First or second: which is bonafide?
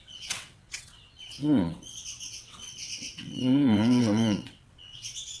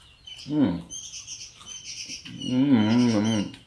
second